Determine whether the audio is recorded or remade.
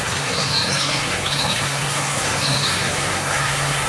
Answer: remade